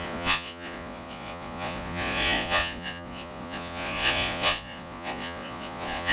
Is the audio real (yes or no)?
no